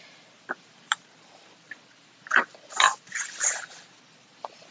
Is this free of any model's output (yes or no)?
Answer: yes